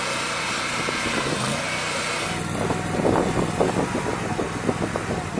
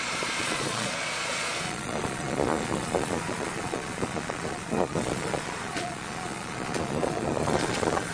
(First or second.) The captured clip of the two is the first